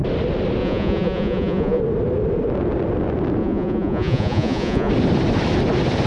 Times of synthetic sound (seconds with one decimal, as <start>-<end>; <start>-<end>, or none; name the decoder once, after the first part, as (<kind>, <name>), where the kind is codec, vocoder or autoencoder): 0.6-1.8 (vocoder, Vocos); 3.4-4.9